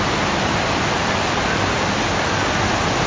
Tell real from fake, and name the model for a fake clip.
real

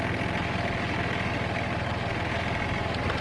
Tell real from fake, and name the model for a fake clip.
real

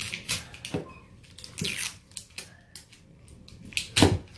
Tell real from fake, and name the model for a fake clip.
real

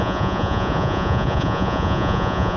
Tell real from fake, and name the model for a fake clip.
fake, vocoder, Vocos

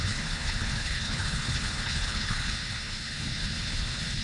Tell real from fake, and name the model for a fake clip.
fake, codec, HILCodec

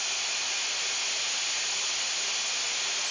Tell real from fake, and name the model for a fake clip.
real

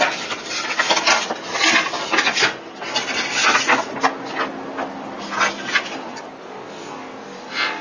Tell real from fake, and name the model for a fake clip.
real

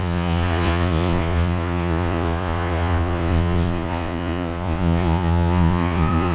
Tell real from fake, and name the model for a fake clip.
fake, vocoder, Vocos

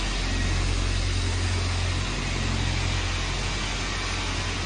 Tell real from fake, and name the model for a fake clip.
real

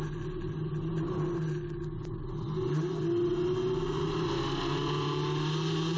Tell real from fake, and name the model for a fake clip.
real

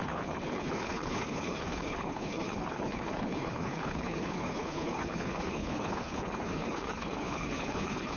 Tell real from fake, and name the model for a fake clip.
fake, codec, HILCodec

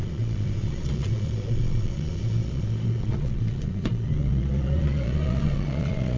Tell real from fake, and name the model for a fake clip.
fake, vocoder, Vocos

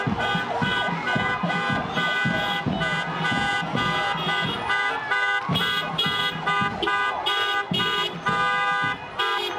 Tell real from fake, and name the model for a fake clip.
real